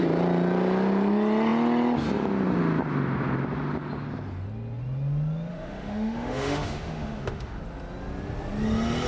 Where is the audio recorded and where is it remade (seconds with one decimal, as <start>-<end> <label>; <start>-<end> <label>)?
0.0-5.5 recorded; 5.5-7.6 remade; 7.6-9.1 recorded